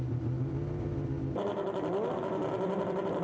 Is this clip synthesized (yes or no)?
no